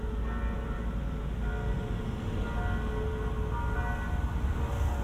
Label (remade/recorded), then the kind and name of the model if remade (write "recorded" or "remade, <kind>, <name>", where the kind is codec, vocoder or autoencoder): recorded